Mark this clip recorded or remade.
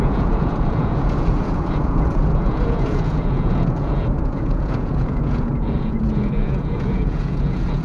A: remade